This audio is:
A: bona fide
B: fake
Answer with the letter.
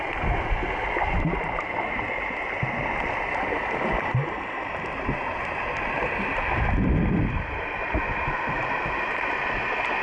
A